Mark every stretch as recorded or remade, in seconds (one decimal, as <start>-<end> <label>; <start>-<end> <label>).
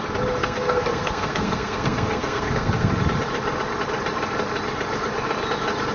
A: 0.0-0.4 recorded; 0.4-2.9 remade; 2.9-5.9 recorded